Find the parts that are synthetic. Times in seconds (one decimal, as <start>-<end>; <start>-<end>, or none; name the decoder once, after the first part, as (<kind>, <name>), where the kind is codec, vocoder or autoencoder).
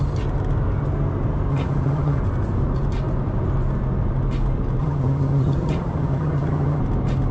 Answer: 1.5-2.2 (vocoder, HiFi-GAN); 4.8-6.8